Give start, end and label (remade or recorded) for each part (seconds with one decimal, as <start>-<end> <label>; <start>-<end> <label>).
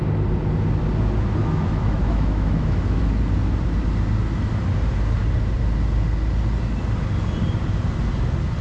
0.0-1.4 recorded; 1.4-3.0 remade; 3.0-8.6 recorded